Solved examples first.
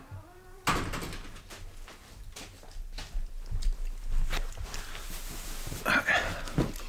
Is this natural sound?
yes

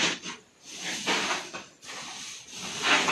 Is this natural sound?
no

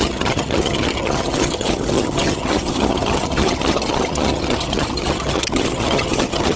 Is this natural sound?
no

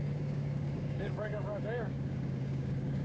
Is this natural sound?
no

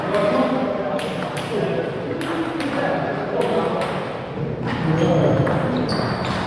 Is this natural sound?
yes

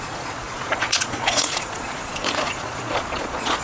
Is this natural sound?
no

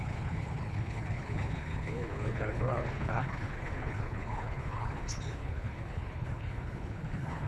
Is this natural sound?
no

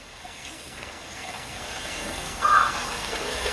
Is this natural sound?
no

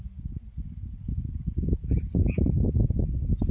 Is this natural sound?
yes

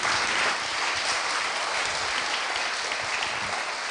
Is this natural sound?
yes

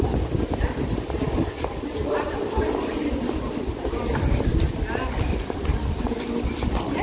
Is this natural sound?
no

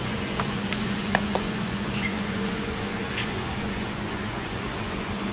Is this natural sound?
no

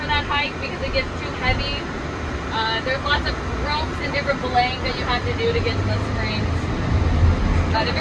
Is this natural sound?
yes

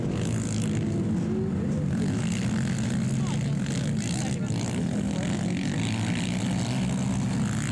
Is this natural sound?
yes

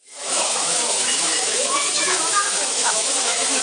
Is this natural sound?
no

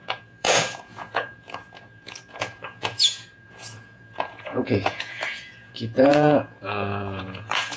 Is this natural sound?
no